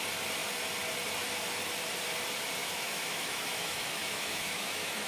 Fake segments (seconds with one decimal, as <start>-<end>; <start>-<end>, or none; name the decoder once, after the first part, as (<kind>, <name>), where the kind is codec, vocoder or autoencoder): 2.6-5.1 (autoencoder, DAC-VAE)